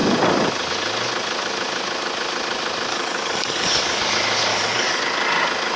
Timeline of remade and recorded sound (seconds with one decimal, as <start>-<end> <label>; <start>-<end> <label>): 0.0-2.9 recorded; 2.9-4.0 remade; 4.0-4.5 recorded; 4.5-5.0 remade; 5.0-5.8 recorded